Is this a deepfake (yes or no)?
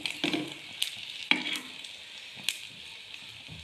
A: no